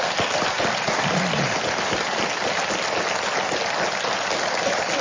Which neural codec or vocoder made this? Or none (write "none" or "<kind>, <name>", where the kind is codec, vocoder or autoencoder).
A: none